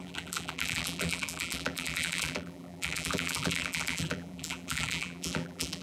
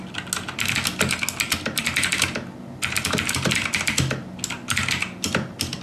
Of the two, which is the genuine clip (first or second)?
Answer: second